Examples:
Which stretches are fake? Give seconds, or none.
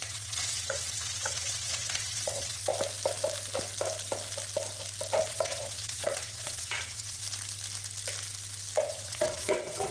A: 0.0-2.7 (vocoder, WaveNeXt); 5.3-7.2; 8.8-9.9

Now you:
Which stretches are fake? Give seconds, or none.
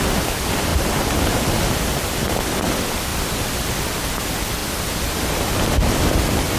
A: 0.7-2.7 (vocoder, BigVGAN v2); 3.1-3.6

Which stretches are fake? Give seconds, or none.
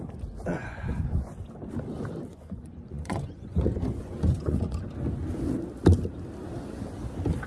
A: 0.5-1.3 (vocoder, Vocos); 2.3-4.8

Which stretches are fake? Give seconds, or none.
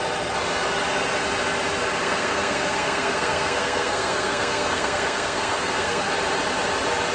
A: 2.0-6.1 (codec, SNAC)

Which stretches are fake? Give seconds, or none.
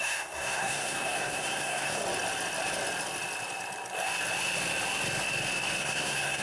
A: 0.0-2.0 (codec, SNAC); 5.8-6.4